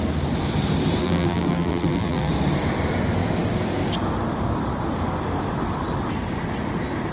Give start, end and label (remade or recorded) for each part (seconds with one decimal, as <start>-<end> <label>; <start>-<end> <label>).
0.0-1.0 recorded; 1.0-2.3 remade; 2.3-7.1 recorded